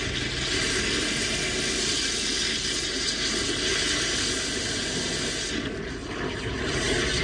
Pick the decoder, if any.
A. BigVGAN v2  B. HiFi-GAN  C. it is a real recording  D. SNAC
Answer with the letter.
C